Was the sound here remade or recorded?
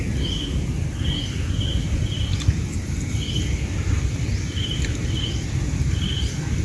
recorded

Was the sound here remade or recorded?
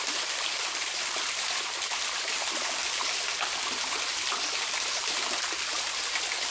remade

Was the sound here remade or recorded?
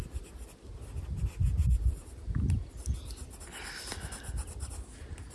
recorded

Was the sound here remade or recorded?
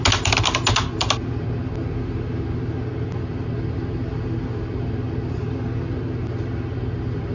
recorded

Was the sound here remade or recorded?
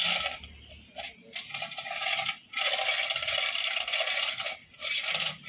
recorded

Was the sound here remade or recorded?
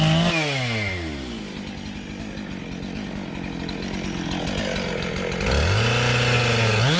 recorded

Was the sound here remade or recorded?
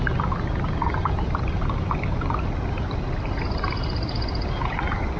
recorded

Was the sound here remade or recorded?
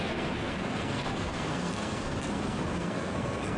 remade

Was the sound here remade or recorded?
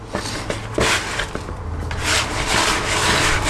recorded